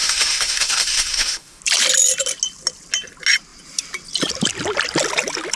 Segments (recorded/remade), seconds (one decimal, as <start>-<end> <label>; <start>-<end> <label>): 0.0-1.6 remade; 1.6-5.6 recorded